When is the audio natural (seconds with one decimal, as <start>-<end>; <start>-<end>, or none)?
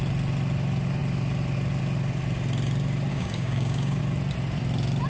0.0-3.1; 4.0-5.1